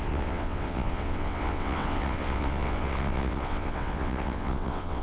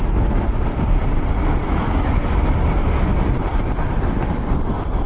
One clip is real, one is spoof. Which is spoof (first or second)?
first